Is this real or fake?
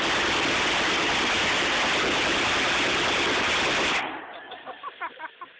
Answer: real